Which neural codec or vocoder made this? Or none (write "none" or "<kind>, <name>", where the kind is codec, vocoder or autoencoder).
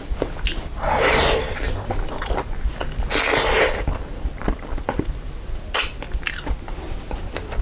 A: none